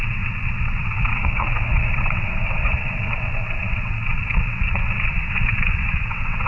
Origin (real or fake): fake